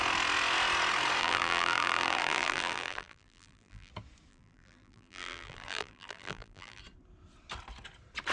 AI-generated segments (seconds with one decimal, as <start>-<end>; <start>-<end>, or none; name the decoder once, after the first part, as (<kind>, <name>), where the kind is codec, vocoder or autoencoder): 1.2-3.9 (vocoder, BigVGAN v2); 4.3-6.8